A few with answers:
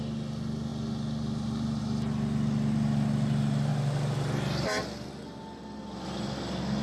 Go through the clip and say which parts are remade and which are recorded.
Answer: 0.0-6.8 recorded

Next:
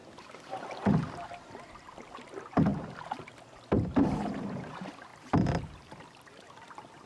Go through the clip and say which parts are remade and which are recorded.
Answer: 0.0-2.7 remade; 2.7-3.3 recorded; 3.3-7.1 remade